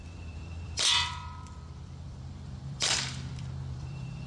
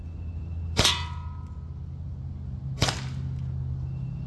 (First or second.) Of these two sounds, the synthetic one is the first